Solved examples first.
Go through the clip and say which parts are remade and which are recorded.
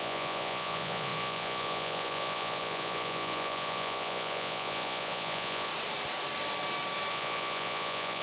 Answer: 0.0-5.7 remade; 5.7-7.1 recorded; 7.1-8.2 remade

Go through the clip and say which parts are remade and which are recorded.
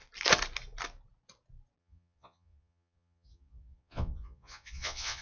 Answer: 0.0-1.8 recorded; 1.8-5.2 remade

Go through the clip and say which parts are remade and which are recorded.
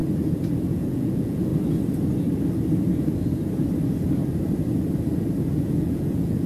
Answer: 0.0-0.7 recorded; 0.7-1.5 remade; 1.5-5.4 recorded; 5.4-6.5 remade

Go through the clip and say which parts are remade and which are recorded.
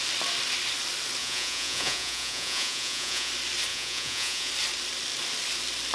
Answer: 0.0-1.2 recorded; 1.2-3.3 remade; 3.3-3.7 recorded; 3.7-4.5 remade; 4.5-5.9 recorded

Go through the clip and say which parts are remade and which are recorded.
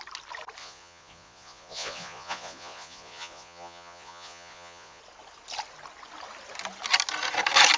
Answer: 0.0-0.6 recorded; 0.6-5.0 remade; 5.0-7.8 recorded